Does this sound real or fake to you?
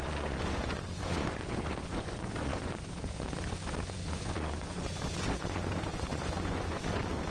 fake